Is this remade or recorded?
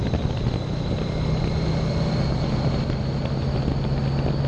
recorded